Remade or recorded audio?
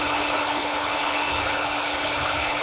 remade